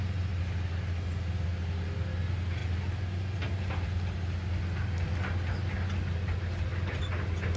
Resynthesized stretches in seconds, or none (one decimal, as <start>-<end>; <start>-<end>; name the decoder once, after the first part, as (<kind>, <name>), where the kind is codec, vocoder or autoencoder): none

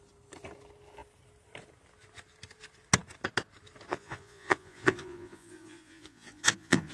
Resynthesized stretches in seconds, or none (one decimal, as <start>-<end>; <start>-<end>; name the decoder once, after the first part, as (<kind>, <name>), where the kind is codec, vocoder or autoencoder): 3.9-6.9 (vocoder, Vocos)

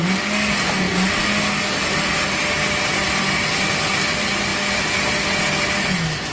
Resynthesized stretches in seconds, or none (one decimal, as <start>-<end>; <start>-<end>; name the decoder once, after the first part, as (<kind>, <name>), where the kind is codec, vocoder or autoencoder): none

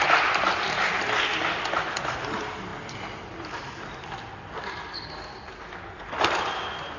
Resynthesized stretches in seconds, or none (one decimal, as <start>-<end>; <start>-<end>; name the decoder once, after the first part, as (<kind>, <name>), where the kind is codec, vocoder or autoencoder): none

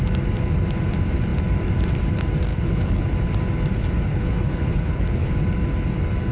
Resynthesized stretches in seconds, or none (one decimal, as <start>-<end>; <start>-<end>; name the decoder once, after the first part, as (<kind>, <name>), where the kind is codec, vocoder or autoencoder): 2.5-3.0 (codec, HILCodec); 4.1-5.3

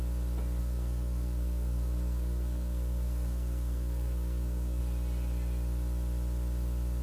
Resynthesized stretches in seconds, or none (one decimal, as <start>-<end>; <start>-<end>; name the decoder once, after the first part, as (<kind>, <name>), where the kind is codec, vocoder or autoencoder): 0.6-4.8 (codec, SNAC)

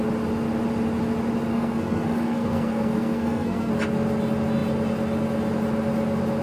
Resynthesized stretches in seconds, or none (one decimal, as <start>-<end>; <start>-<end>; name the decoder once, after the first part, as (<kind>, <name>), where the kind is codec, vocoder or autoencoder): 1.5-3.7 (codec, SNAC)